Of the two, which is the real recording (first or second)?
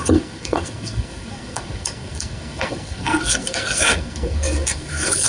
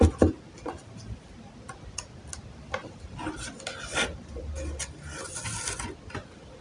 second